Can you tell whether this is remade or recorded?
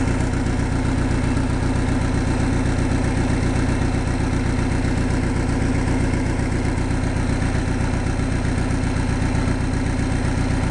recorded